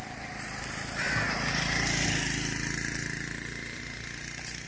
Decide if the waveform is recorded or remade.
recorded